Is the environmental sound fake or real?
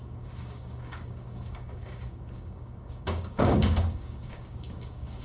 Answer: fake